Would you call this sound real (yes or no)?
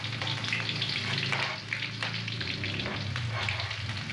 yes